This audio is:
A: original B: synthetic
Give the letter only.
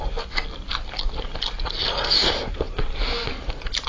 A